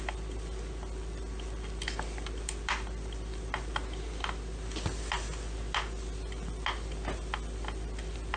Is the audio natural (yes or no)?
yes